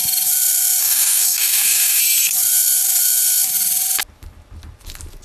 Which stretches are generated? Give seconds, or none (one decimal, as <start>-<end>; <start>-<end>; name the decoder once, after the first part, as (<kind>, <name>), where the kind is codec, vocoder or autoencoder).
0.8-2.0 (codec, DAC)